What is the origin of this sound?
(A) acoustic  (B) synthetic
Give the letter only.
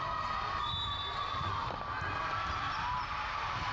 A